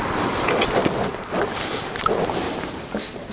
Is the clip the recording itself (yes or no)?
yes